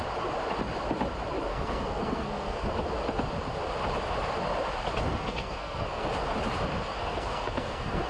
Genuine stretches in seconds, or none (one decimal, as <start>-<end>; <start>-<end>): 0.0-1.5; 2.7-5.1; 6.1-6.9